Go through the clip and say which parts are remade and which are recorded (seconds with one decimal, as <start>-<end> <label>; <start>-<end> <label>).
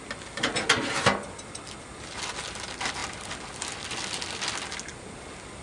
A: 0.0-5.6 recorded